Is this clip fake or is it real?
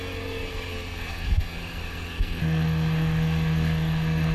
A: fake